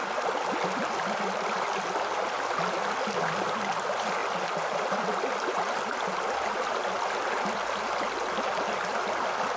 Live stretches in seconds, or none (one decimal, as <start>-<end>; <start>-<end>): 0.0-9.6